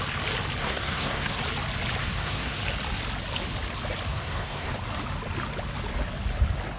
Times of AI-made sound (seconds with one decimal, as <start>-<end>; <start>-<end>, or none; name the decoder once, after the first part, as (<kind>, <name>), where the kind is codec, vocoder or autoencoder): 0.6-1.4 (codec, SNAC); 2.0-2.6; 4.1-4.7